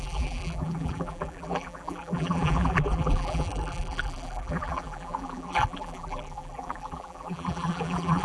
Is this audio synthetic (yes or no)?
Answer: yes